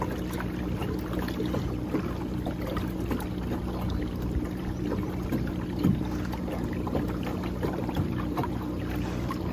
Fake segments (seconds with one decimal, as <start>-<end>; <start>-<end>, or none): none